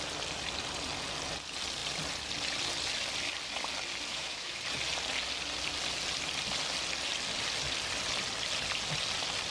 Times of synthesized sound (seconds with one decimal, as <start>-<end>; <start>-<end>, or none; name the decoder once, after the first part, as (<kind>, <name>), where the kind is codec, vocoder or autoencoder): 4.1-4.6 (autoencoder, DAC-VAE)